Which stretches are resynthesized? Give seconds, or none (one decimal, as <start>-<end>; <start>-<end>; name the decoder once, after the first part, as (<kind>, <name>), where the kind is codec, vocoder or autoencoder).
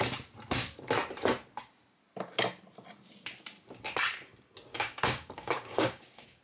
4.7-6.4 (codec, DAC)